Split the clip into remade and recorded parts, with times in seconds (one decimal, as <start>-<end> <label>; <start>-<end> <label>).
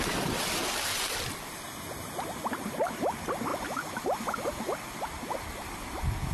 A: 0.0-6.3 recorded